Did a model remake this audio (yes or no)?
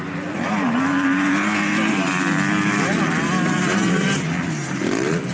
no